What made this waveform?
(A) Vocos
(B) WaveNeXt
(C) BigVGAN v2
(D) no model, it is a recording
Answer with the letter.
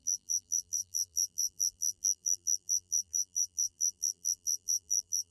C